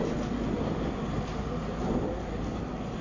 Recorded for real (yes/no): yes